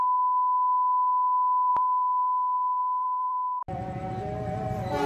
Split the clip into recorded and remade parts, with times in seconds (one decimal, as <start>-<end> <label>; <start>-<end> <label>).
0.0-1.7 recorded; 1.7-3.6 remade; 3.6-5.1 recorded